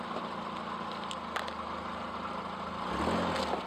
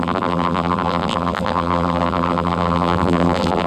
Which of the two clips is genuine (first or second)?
first